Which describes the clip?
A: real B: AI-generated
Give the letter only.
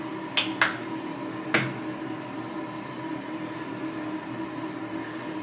A